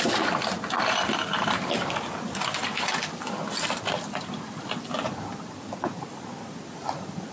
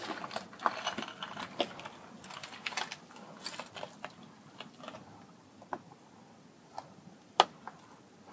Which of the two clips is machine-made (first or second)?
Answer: first